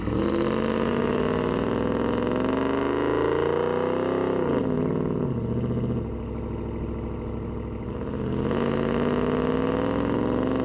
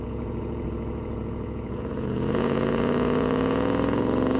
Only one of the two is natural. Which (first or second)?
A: first